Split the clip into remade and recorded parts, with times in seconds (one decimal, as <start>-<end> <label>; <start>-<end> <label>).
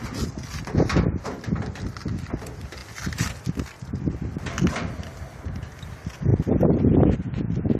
0.0-7.8 recorded